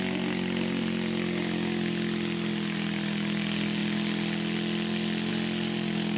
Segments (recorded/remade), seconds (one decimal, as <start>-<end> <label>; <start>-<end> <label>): 0.0-6.2 recorded